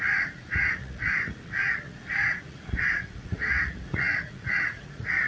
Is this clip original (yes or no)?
no